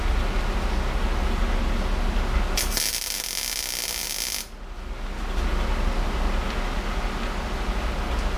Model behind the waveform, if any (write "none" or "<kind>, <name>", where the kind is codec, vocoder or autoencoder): none